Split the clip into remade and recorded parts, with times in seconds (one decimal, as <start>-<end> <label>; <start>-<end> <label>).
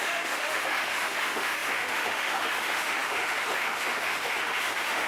0.0-5.1 remade